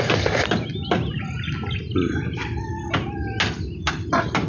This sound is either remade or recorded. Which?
recorded